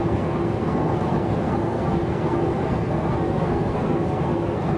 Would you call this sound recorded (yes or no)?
no